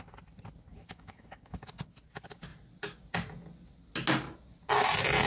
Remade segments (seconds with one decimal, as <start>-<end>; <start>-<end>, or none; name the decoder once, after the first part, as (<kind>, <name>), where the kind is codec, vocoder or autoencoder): 0.7-1.7 (autoencoder, DAC-VAE)